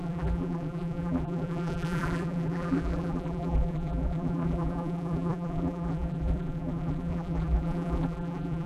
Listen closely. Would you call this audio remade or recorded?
remade